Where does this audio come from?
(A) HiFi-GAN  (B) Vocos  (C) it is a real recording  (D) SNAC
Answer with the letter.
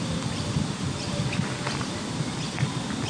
C